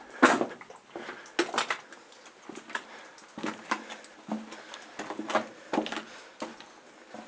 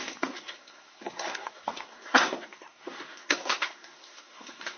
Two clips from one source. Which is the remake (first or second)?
second